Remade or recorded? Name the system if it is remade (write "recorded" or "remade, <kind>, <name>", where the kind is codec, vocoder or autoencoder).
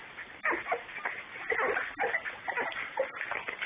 recorded